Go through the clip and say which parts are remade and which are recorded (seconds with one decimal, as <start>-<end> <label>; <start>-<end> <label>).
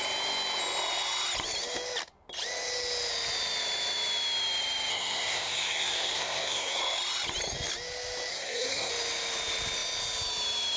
0.0-4.9 recorded; 4.9-6.8 remade; 6.8-8.3 recorded; 8.3-8.9 remade; 8.9-10.8 recorded